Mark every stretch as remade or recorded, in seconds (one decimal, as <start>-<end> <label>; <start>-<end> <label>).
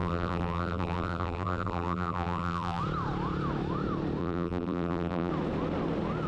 0.0-2.8 remade; 2.8-4.2 recorded; 4.2-5.3 remade; 5.3-6.3 recorded